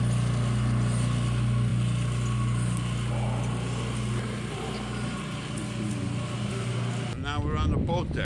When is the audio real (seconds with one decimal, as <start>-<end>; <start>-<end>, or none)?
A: 0.0-8.2